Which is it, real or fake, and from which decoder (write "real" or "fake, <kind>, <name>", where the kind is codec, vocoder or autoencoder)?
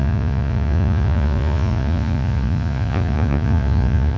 fake, vocoder, Vocos